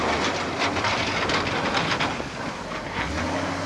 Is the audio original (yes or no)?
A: yes